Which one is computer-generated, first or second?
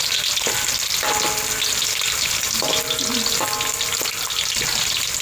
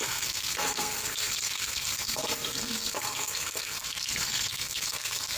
second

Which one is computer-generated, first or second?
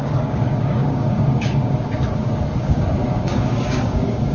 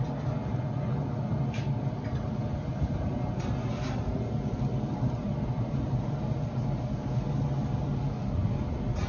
first